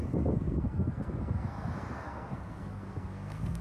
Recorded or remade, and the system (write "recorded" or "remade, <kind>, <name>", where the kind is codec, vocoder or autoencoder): remade, codec, SNAC